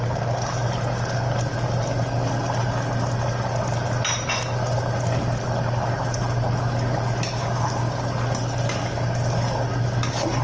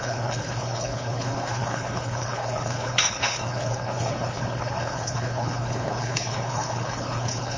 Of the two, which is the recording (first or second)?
first